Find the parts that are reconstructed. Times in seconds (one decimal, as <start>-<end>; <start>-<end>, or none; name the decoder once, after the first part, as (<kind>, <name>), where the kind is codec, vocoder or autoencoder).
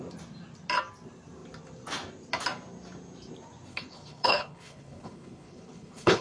3.7-6.2 (codec, HILCodec)